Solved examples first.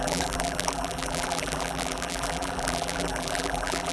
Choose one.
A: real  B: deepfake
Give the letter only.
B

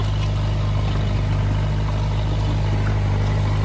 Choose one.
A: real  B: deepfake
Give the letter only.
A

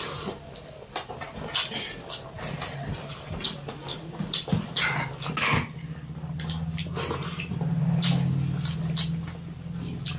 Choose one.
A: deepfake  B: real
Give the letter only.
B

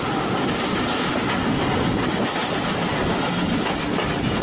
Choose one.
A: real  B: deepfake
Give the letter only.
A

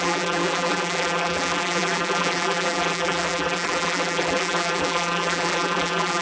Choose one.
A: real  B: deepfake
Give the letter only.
B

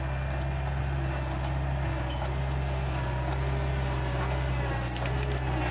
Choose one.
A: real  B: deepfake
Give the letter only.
A